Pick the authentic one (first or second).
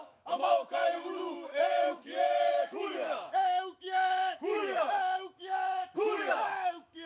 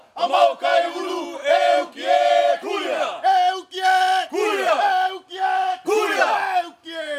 second